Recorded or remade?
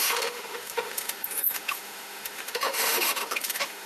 remade